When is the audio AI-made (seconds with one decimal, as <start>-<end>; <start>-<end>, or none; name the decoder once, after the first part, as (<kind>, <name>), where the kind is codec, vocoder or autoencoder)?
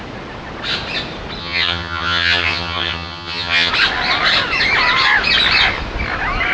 1.4-3.7 (vocoder, HiFi-GAN)